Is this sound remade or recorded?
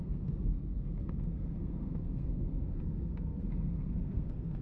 remade